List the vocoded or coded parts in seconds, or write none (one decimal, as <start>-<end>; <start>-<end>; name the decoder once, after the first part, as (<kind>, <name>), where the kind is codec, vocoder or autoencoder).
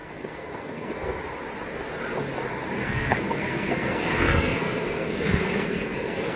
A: 0.0-1.2 (codec, SNAC); 2.8-6.4